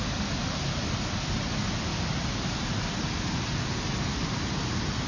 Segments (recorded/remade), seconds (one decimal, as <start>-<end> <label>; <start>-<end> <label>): 0.0-1.9 recorded; 1.9-2.7 remade; 2.7-4.2 recorded; 4.2-5.1 remade